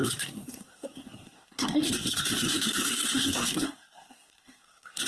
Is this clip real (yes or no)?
no